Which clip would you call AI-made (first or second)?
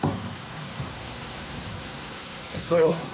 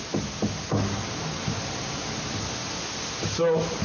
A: first